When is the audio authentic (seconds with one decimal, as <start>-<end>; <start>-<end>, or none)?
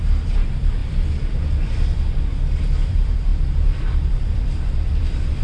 0.8-2.2